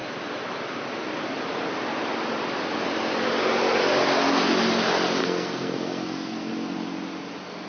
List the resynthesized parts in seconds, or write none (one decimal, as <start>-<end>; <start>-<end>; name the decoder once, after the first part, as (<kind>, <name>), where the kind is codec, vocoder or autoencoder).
5.2-6.5 (codec, SNAC)